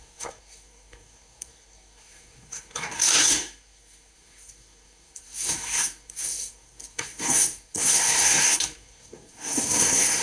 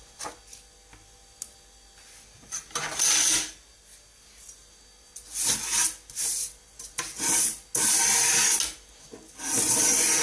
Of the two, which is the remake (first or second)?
first